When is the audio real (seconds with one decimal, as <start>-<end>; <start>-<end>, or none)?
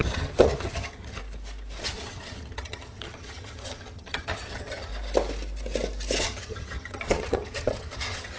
1.2-1.8; 4.9-6.2